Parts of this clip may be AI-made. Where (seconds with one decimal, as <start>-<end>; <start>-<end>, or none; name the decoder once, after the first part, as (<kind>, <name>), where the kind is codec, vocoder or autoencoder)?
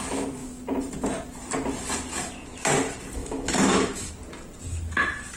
3.2-4.1 (autoencoder, DAC-VAE)